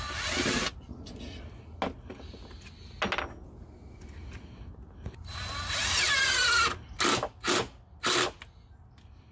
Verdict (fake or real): real